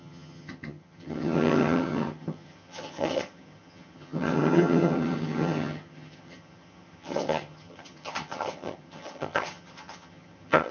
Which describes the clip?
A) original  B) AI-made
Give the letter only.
B